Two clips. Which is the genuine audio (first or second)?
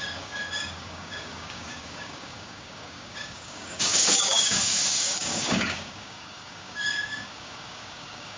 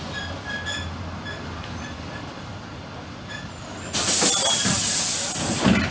second